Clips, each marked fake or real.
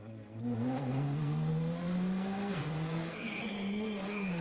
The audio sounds fake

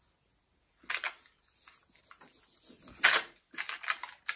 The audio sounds real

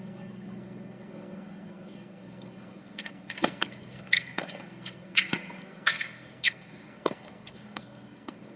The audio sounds fake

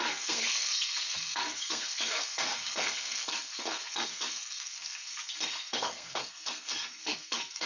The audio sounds fake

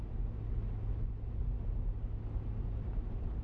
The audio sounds real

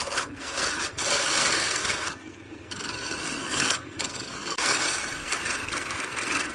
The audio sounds fake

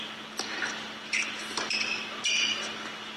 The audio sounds real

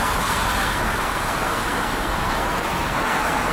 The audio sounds fake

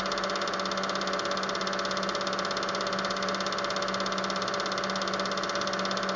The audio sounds real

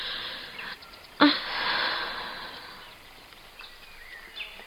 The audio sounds real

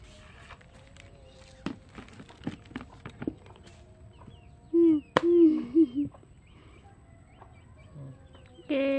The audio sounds real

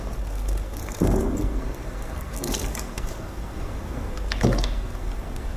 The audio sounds fake